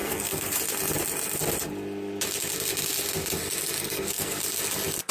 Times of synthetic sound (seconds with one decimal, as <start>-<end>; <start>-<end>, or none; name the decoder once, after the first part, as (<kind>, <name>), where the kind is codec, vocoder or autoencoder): 0.0-0.6 (codec, SNAC); 3.8-4.4